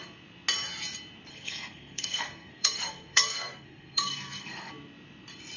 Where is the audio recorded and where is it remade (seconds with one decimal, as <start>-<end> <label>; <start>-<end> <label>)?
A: 0.0-1.3 recorded; 1.3-4.7 remade; 4.7-5.6 recorded